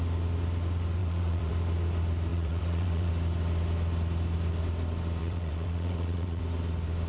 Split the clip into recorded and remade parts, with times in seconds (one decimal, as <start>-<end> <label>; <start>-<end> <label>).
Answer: 0.0-1.0 recorded; 1.0-1.5 remade; 1.5-2.3 recorded; 2.3-3.1 remade; 3.1-5.2 recorded; 5.2-6.4 remade; 6.4-7.1 recorded